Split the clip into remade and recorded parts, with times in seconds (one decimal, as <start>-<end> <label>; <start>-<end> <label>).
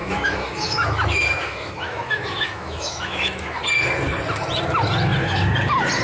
0.0-3.6 remade; 3.6-6.0 recorded